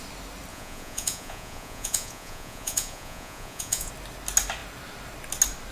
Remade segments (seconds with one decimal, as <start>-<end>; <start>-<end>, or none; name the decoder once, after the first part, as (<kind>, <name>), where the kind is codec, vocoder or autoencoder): 0.5-3.9 (vocoder, Vocos)